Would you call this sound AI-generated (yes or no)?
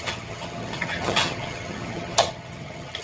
yes